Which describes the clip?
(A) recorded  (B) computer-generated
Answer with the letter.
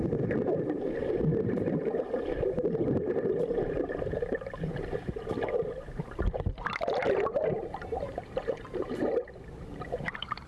B